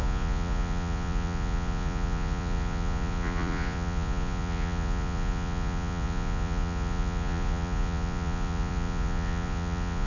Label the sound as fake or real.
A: fake